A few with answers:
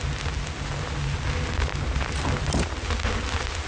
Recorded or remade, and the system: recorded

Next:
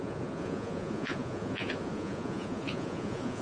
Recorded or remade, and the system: remade, vocoder, Vocos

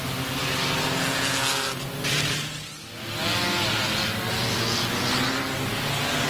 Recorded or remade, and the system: recorded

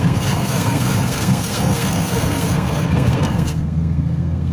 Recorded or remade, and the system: remade, codec, SNAC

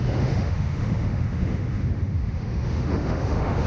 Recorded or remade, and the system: remade, autoencoder, DAC-VAE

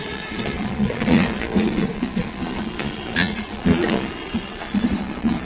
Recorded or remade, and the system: remade, vocoder, Vocos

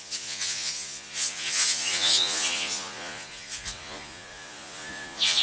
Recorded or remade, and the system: remade, vocoder, Vocos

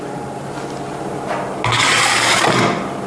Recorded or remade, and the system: recorded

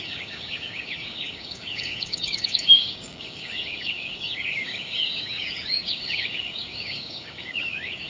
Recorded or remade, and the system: remade, codec, DAC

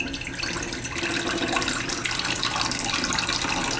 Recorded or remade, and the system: recorded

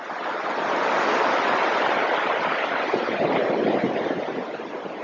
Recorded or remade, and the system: recorded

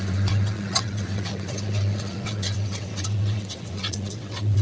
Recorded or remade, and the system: remade, vocoder, WaveNeXt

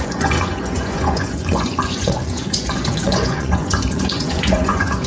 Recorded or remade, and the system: remade, vocoder, Vocos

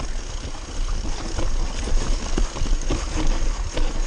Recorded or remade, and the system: recorded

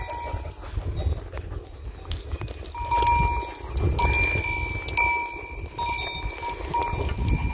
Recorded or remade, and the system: recorded